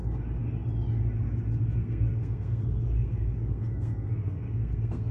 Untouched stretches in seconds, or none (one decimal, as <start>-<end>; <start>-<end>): 0.0-1.8